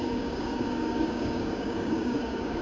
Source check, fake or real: fake